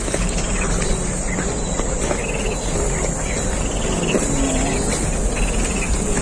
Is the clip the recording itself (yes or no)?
yes